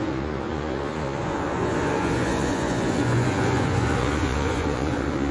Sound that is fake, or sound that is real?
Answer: fake